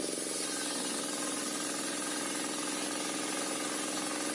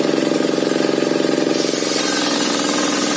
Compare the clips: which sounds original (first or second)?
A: first